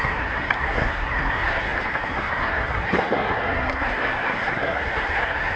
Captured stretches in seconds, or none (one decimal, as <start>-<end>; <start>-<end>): none